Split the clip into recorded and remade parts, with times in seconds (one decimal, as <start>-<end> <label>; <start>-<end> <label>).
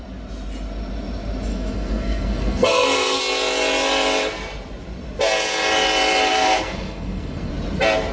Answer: 0.0-1.5 recorded; 1.5-3.2 remade; 3.2-6.3 recorded; 6.3-7.5 remade; 7.5-8.1 recorded